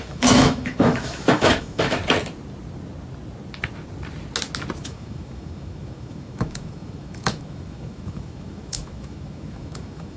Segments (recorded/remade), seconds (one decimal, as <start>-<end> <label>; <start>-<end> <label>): 0.0-2.0 remade; 2.0-4.8 recorded; 4.8-10.2 remade